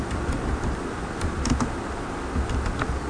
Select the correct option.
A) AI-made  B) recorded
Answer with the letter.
B